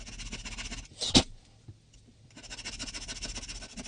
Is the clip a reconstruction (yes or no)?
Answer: no